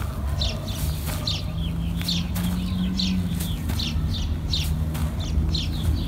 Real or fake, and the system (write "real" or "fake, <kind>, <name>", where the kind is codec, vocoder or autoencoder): real